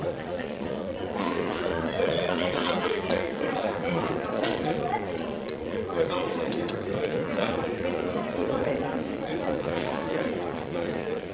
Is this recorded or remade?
remade